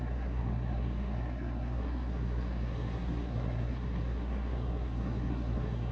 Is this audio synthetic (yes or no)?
yes